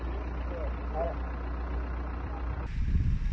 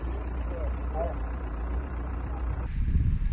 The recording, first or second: first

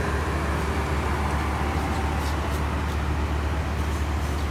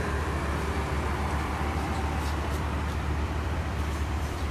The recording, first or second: first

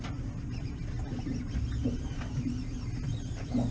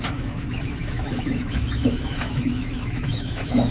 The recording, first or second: first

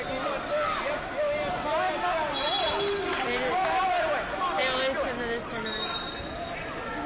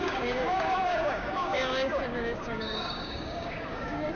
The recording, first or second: first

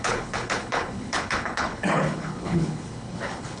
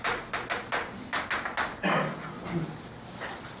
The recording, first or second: second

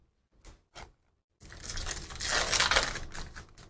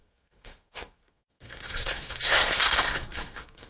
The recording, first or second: first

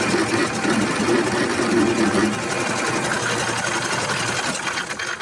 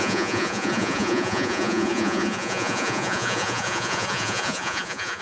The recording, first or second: first